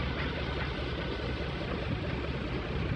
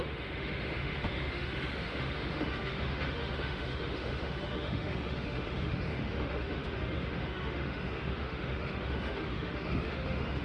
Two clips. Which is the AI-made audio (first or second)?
second